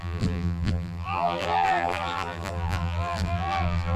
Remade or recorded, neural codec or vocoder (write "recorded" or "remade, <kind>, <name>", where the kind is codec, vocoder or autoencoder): remade, vocoder, BigVGAN v2